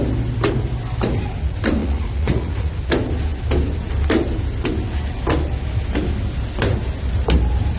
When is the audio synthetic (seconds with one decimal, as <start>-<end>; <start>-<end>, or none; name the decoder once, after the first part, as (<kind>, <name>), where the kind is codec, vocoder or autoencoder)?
1.8-2.7 (vocoder, Vocos)